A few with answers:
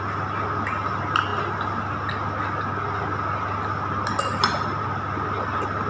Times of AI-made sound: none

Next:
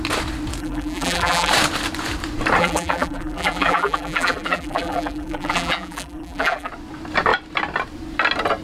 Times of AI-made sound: 0.6-1.5 (vocoder, BigVGAN v2); 2.6-6.7

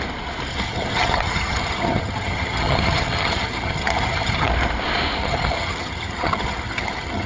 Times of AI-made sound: 0.5-4.5 (vocoder, HiFi-GAN); 5.2-7.3

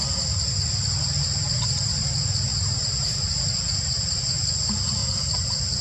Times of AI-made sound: 2.5-3.4 (vocoder, BigVGAN v2); 5.0-5.8

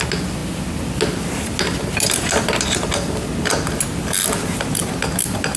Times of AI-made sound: none

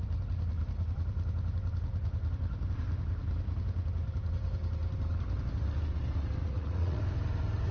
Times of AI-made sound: 6.4-7.0 (vocoder, Vocos)

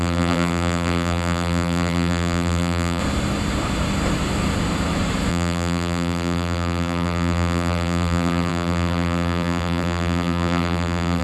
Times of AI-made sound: 0.0-3.0 (vocoder, BigVGAN v2); 5.3-11.2

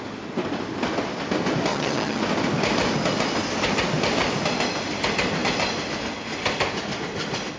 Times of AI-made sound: 1.7-2.2 (vocoder, HiFi-GAN)